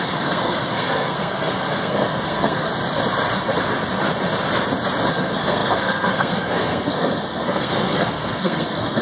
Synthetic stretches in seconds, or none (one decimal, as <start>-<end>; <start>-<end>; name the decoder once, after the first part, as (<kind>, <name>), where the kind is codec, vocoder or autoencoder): 0.0-2.7 (codec, SNAC); 5.1-9.0